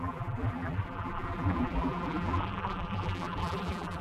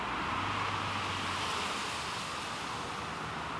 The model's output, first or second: first